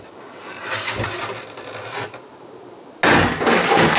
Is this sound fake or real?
real